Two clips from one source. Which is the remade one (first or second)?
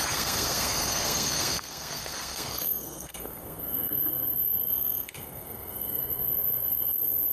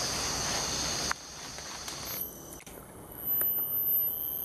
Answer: first